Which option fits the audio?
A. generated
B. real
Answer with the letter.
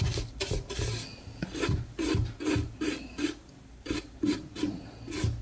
B